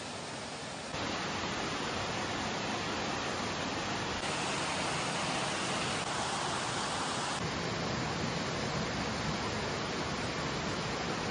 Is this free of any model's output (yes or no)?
yes